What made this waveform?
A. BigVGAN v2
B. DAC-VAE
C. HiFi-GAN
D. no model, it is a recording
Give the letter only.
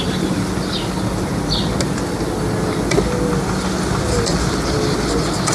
D